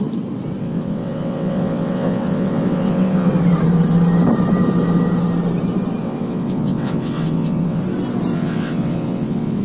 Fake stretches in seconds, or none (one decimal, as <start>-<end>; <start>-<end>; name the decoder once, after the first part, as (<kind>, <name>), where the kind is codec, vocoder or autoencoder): 0.6-3.3 (vocoder, WaveNeXt); 6.0-7.8; 8.3-9.6